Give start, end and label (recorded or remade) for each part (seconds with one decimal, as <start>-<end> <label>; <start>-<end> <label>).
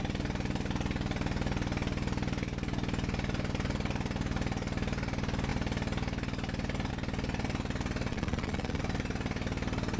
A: 0.0-8.1 recorded; 8.1-8.8 remade; 8.8-10.0 recorded